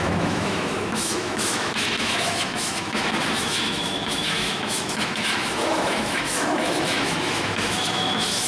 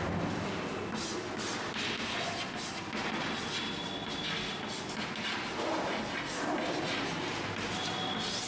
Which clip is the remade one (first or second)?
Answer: first